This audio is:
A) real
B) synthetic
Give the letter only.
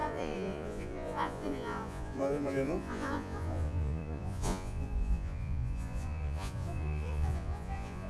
B